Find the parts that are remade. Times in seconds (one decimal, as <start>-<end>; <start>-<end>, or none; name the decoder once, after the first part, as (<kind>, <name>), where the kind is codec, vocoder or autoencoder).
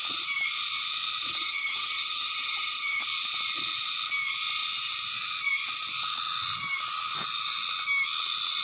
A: 1.3-3.0 (vocoder, HiFi-GAN)